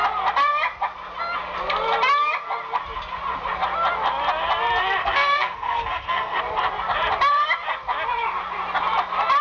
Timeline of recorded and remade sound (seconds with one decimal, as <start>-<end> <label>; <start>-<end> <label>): 0.0-5.0 recorded; 5.0-6.4 remade; 6.4-9.4 recorded